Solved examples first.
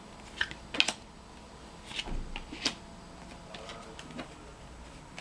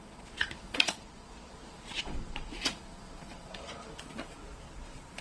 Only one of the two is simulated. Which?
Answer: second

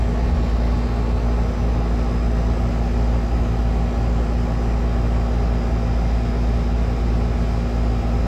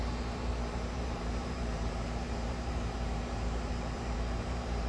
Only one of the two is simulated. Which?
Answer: second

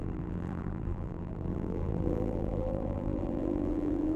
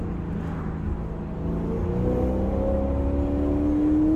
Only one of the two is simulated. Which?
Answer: first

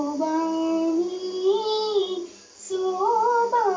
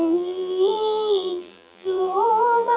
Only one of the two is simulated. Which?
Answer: second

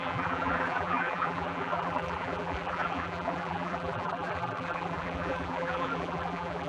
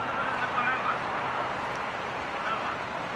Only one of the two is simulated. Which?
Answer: first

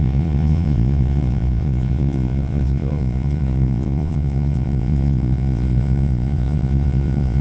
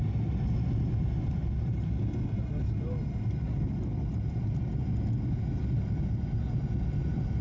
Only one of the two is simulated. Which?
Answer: first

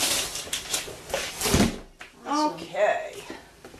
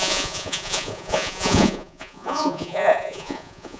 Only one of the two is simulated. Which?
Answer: second